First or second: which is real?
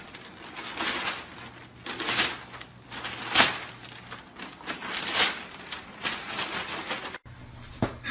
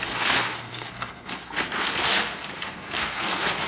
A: first